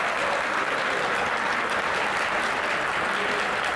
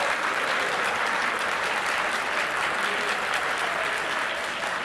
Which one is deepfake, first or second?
second